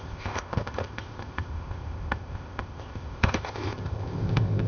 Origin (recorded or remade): remade